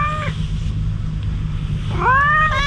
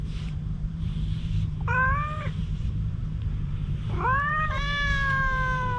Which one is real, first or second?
first